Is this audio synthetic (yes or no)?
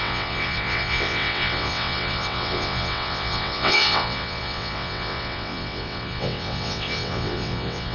yes